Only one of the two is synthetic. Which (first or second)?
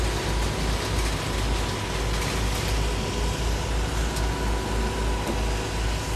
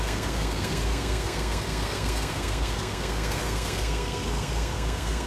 second